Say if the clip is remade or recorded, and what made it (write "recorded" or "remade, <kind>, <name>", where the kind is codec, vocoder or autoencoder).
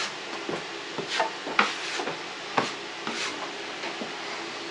recorded